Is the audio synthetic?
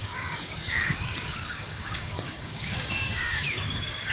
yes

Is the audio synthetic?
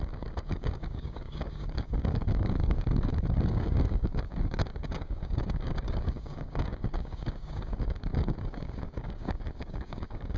yes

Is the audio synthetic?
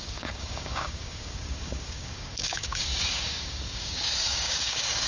yes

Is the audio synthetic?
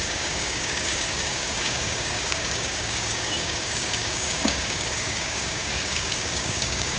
yes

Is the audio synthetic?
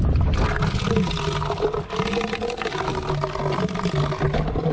no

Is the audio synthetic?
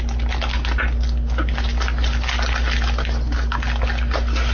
no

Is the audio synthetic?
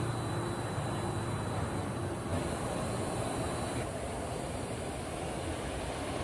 no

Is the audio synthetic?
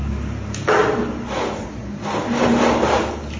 no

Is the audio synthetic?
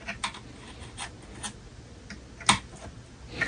no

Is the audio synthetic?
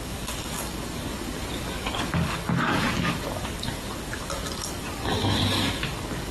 yes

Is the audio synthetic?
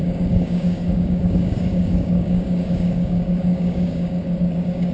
yes